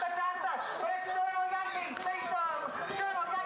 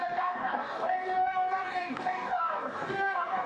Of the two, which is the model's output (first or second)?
second